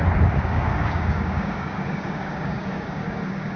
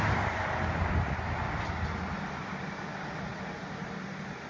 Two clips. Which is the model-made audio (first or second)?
first